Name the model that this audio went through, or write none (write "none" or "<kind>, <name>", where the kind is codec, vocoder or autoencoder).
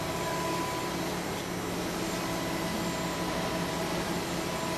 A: none